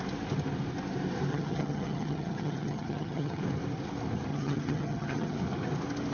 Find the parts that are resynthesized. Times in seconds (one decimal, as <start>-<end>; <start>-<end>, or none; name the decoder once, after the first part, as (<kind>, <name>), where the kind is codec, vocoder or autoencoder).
1.3-3.4 (vocoder, HiFi-GAN); 4.3-5.4